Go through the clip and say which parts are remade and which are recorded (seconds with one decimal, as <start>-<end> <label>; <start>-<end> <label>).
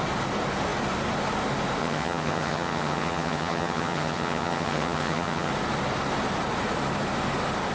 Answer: 0.0-1.8 recorded; 1.8-5.5 remade; 5.5-7.7 recorded